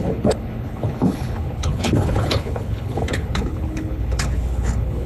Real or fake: fake